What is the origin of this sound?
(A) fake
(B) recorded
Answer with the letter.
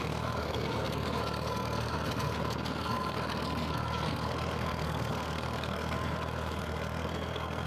A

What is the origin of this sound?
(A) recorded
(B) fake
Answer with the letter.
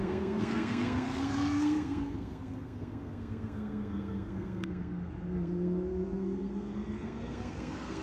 B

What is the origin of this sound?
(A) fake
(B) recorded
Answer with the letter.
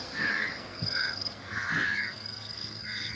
A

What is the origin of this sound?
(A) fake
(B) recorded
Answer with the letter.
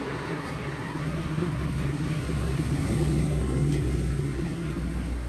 A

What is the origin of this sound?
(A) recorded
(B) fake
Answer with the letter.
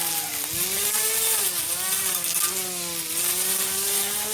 A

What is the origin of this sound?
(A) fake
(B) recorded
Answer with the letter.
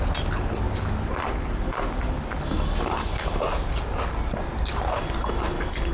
B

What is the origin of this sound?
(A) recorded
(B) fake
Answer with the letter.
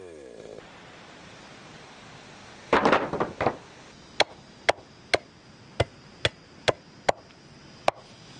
A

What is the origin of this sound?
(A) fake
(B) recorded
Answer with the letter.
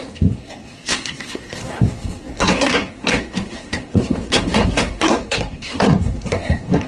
A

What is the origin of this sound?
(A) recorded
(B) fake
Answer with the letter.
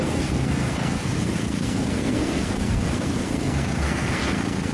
B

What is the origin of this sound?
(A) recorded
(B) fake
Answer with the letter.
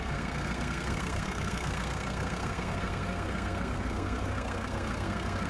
B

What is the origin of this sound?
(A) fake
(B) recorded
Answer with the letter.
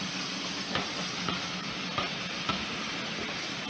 B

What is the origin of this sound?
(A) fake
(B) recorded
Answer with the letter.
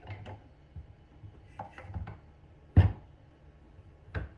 B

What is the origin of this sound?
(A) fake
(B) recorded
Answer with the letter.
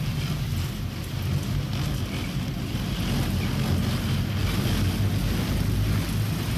B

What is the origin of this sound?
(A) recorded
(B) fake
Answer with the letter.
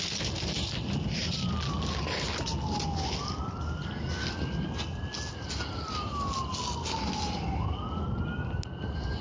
A